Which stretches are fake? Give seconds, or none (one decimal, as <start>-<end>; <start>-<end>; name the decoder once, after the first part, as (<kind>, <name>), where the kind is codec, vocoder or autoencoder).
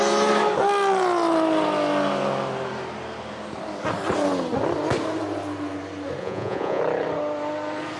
6.2-6.8 (vocoder, Vocos)